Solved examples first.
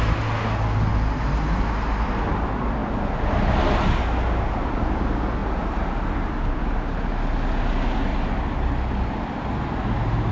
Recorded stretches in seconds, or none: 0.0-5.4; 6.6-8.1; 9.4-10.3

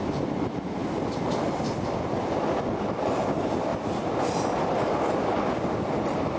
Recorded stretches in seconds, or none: 0.0-3.7; 4.2-6.4

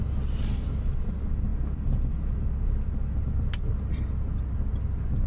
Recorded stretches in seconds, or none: 0.0-5.3